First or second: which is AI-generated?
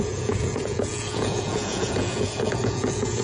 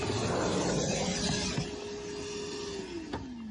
first